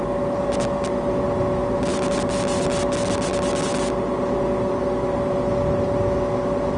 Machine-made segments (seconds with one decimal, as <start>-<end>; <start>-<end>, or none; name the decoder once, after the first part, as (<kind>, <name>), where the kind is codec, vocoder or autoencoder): none